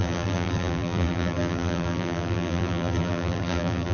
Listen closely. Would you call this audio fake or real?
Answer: fake